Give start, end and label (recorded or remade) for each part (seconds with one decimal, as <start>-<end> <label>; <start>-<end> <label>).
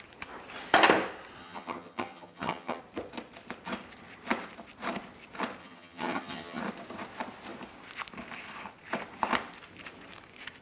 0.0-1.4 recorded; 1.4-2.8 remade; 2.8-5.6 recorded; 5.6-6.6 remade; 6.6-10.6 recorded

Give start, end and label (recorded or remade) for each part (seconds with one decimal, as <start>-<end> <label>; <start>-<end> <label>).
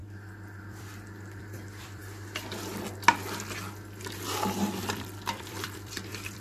0.0-0.6 recorded; 0.6-2.0 remade; 2.0-4.8 recorded; 4.8-6.4 remade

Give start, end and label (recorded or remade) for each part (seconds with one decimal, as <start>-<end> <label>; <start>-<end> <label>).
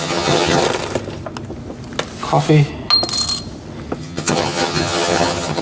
0.0-0.6 remade; 0.6-4.0 recorded; 4.0-5.6 remade